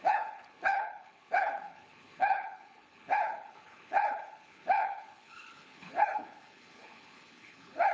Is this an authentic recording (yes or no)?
no